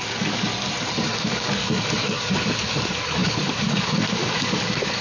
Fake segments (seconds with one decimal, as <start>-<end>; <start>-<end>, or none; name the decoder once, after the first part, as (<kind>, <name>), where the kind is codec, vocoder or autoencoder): 0.0-0.5 (codec, DAC); 1.2-5.0